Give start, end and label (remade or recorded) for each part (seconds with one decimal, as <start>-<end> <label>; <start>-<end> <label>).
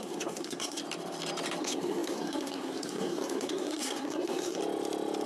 0.0-0.8 remade; 0.8-1.6 recorded; 1.6-4.6 remade; 4.6-5.3 recorded